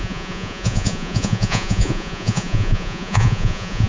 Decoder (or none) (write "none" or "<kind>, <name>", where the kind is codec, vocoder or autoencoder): vocoder, Vocos